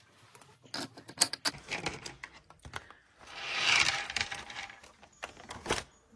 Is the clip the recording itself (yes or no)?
yes